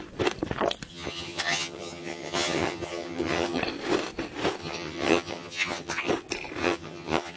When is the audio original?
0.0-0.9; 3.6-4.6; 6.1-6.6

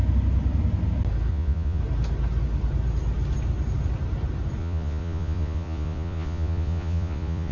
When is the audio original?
0.0-1.3; 1.8-4.6

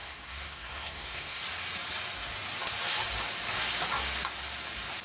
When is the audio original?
1.4-5.0

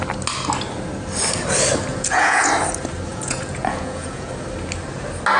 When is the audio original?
0.0-1.9; 2.5-3.1; 4.3-5.4